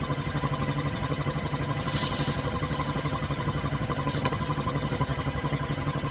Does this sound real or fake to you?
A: fake